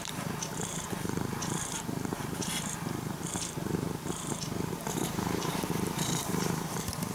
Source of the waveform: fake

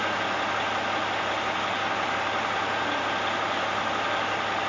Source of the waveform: real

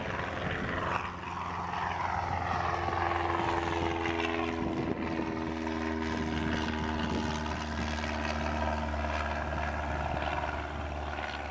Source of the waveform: real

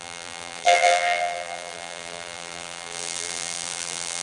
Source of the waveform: fake